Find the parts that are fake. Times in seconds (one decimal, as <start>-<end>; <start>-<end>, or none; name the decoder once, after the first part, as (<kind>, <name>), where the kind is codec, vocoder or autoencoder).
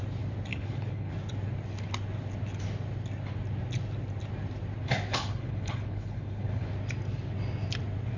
0.5-1.1 (codec, HILCodec); 5.1-6.7